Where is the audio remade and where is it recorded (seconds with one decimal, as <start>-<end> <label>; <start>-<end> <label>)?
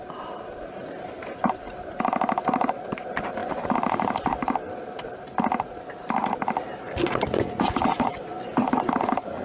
0.0-9.4 recorded